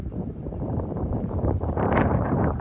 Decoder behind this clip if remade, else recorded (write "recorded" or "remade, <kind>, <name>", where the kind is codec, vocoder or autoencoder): remade, vocoder, BigVGAN v2